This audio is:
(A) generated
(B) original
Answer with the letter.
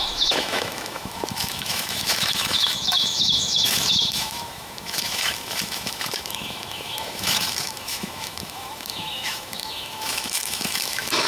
A